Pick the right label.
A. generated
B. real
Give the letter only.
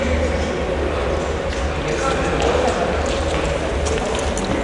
B